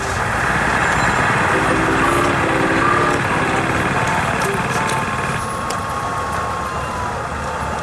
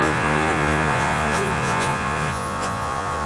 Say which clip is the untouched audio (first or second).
first